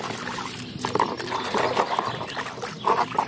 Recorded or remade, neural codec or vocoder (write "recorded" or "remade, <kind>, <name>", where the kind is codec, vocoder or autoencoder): recorded